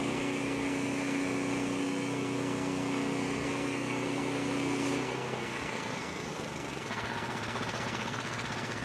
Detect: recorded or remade remade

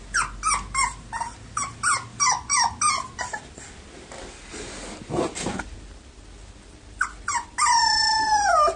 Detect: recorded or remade recorded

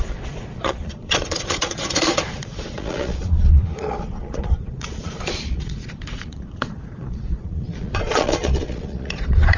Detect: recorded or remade remade